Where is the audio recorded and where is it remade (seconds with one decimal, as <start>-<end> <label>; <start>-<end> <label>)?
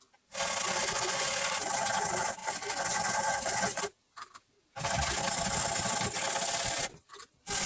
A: 0.0-0.8 recorded; 0.8-1.7 remade; 1.7-2.4 recorded; 2.4-3.8 remade; 3.8-7.7 recorded